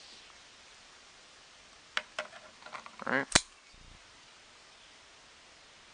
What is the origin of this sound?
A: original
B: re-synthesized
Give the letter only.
A